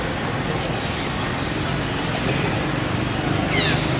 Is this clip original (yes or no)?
yes